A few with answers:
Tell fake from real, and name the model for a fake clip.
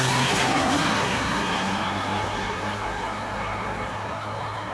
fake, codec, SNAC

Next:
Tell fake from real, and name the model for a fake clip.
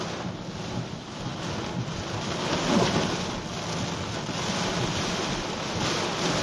real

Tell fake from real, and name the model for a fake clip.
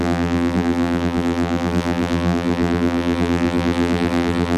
fake, vocoder, BigVGAN v2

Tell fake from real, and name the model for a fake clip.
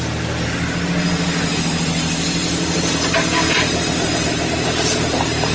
real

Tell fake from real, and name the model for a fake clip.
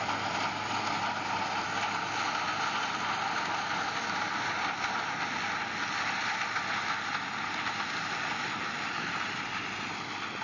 real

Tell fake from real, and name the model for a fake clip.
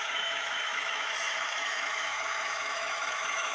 fake, autoencoder, DAC-VAE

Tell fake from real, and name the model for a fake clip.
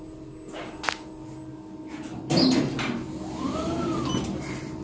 real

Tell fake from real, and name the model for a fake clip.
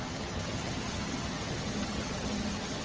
fake, vocoder, HiFi-GAN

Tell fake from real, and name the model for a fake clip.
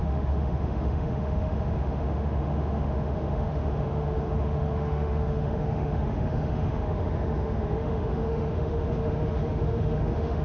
fake, autoencoder, DAC-VAE